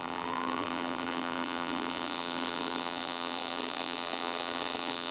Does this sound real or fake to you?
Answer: fake